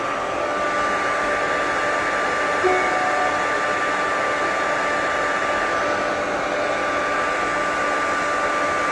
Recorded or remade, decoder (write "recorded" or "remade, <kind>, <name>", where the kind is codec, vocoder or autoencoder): recorded